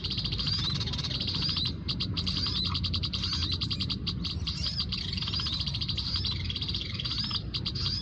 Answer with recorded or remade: remade